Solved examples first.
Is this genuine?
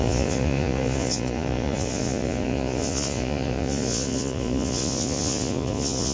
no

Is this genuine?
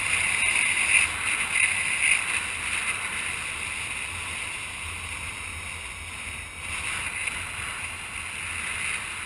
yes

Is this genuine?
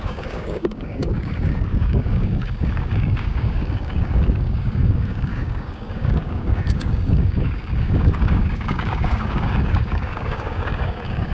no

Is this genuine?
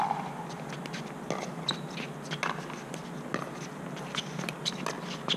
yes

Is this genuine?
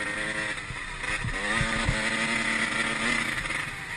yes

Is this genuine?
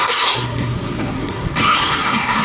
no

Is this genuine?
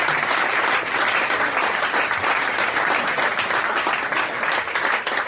yes